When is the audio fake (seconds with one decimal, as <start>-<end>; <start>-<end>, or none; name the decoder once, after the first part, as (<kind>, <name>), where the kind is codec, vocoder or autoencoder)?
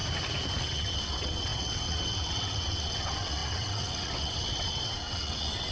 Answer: 0.6-5.7 (vocoder, WaveNeXt)